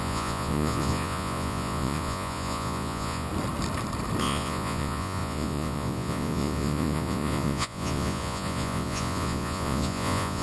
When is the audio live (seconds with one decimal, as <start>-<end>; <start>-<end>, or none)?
3.3-4.2